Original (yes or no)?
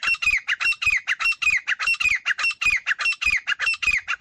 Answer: yes